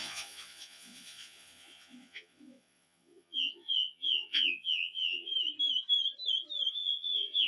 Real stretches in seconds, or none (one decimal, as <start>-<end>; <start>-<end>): 5.3-6.7